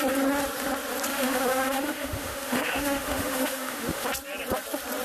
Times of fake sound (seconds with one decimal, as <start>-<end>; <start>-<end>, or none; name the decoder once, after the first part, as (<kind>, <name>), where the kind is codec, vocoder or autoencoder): 1.1-4.1 (autoencoder, DAC-VAE)